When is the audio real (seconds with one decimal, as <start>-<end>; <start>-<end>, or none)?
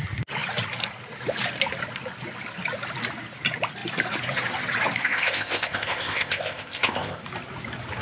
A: 0.0-5.0; 7.2-8.0